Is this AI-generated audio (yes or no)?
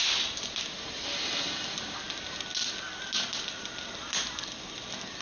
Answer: no